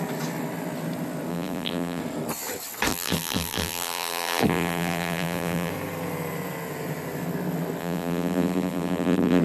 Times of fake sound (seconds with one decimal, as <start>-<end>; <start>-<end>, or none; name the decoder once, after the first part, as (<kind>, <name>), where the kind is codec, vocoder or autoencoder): 1.3-2.0 (vocoder, BigVGAN v2); 2.9-5.7; 7.8-9.4